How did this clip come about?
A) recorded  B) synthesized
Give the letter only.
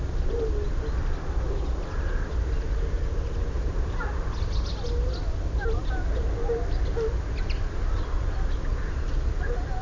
A